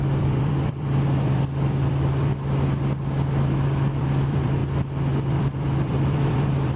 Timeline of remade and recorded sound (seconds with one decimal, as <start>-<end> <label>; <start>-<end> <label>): 0.0-2.3 remade; 2.3-4.0 recorded; 4.0-4.6 remade; 4.6-5.3 recorded; 5.3-6.8 remade